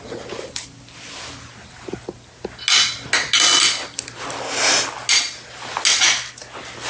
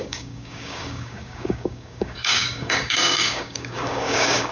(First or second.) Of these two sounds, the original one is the first